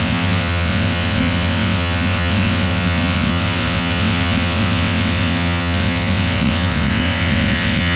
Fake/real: fake